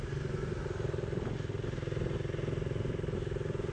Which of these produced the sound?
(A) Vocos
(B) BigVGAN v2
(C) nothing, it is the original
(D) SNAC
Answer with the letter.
C